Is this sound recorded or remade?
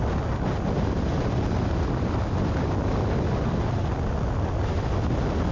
recorded